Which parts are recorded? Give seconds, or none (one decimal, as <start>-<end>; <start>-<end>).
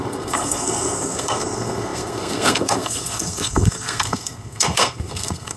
none